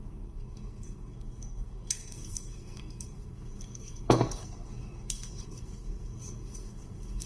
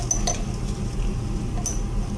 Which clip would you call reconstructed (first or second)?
first